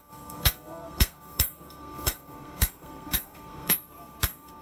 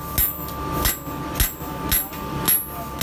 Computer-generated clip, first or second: first